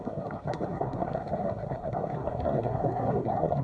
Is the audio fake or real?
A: fake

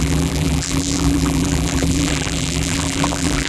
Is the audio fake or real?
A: fake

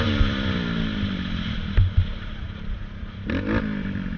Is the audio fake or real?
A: fake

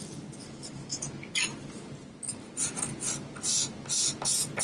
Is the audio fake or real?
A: real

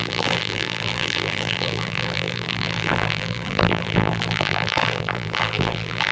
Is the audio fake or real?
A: fake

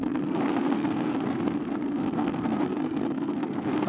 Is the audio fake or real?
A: fake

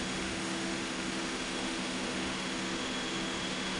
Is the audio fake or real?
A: fake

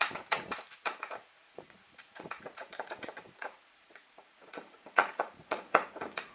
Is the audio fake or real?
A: fake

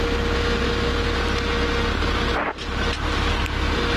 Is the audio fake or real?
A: real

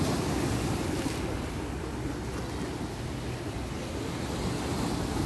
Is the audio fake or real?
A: real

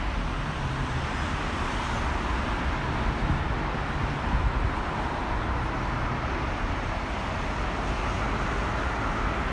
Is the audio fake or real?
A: real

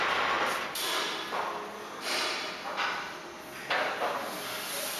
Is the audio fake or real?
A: real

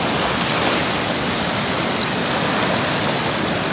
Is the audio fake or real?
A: real